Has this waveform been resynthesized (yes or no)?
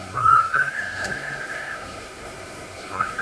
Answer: yes